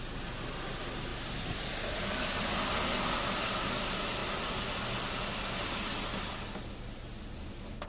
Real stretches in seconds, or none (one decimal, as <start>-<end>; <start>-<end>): 0.0-7.9